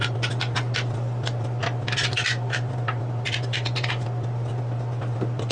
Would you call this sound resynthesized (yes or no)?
no